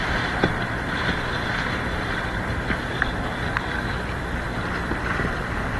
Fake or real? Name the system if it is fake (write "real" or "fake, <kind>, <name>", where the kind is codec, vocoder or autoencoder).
real